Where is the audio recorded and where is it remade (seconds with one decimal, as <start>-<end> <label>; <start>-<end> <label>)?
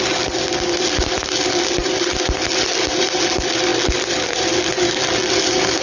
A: 0.0-5.8 recorded